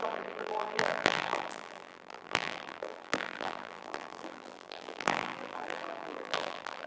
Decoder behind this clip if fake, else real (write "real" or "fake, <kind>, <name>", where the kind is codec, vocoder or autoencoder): fake, vocoder, BigVGAN v2